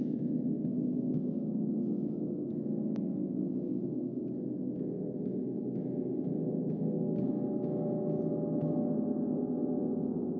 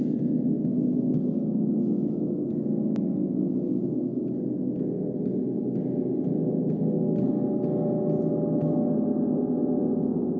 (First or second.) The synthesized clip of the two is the first